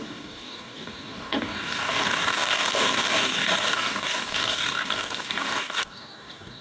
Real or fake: fake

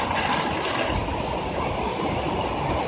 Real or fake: real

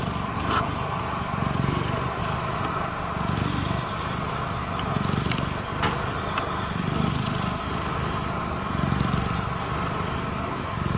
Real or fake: real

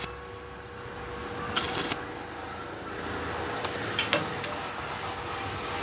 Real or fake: real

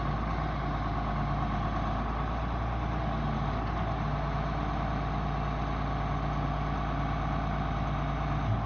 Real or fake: real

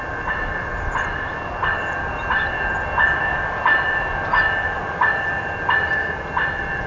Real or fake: real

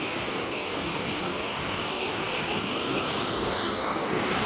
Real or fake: fake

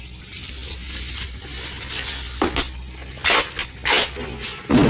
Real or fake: real